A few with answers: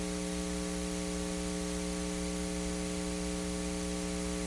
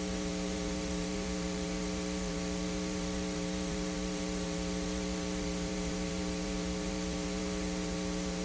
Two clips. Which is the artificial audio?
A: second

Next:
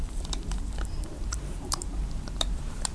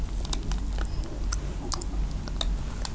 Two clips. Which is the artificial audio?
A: first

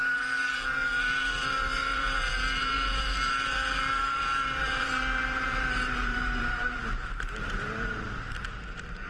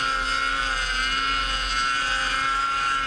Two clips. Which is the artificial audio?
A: first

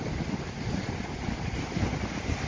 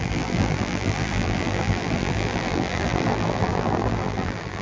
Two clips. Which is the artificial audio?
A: second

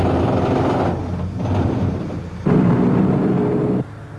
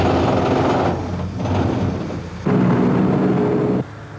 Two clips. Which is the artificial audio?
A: first